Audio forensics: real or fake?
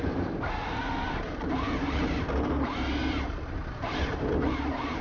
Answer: fake